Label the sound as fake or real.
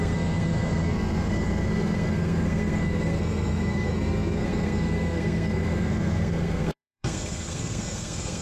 fake